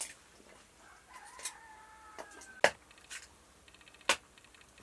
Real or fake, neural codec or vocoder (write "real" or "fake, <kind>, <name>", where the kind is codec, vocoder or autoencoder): real